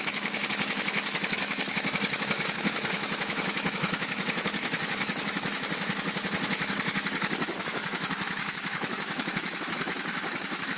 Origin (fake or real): fake